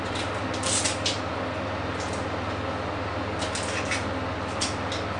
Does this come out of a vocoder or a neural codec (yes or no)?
no